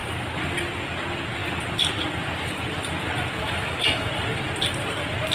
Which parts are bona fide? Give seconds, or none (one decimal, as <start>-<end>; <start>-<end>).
0.0-3.4; 4.1-5.3